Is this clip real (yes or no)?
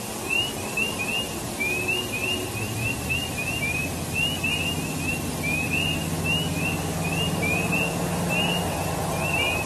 yes